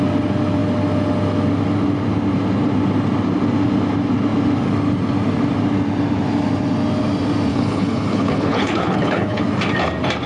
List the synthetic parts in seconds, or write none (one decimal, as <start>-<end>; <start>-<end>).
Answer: 7.5-9.4